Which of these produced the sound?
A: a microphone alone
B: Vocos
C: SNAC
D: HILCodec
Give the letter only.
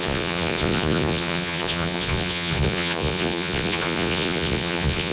B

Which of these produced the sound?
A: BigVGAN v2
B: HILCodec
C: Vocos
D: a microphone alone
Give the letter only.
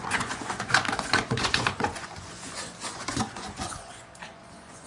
C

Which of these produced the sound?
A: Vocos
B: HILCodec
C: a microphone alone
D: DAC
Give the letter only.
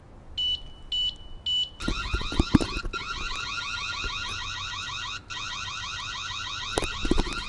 C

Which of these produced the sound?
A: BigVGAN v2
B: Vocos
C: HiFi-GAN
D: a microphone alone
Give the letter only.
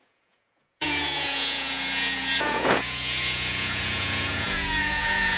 B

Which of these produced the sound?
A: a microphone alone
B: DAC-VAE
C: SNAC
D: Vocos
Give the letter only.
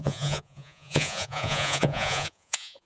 D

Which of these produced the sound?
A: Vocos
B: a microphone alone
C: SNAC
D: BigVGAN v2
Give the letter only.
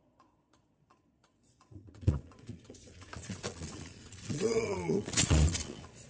A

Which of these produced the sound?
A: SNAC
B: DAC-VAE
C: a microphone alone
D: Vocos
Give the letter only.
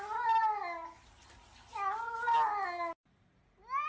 C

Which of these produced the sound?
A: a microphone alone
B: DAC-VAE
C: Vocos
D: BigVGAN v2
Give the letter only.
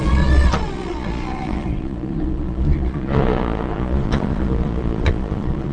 C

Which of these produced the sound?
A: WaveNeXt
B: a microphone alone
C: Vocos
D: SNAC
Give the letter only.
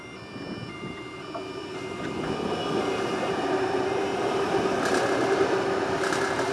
B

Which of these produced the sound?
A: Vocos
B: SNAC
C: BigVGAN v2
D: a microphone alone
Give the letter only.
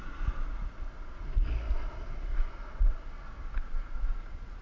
D